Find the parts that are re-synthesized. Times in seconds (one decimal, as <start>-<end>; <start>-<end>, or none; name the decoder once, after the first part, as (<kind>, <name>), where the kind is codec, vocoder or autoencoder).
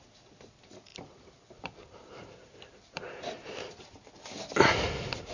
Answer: 0.9-4.1 (vocoder, BigVGAN v2)